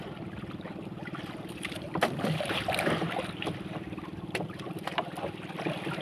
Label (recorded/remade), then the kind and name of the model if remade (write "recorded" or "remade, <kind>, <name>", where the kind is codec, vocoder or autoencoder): remade, vocoder, BigVGAN v2